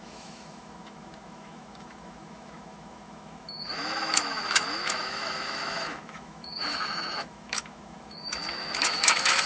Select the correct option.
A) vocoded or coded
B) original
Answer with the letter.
A